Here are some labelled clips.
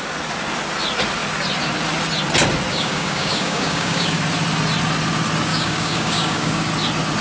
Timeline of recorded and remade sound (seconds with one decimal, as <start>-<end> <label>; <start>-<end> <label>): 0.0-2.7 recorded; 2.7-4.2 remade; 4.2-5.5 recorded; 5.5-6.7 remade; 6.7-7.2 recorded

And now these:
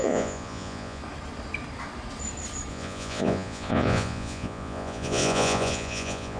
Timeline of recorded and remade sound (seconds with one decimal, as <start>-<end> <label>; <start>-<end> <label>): 0.0-1.0 remade; 1.0-2.7 recorded; 2.7-6.4 remade

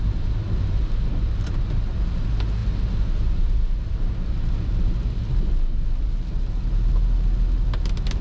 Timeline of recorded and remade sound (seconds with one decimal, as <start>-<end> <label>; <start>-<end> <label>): 0.0-8.2 recorded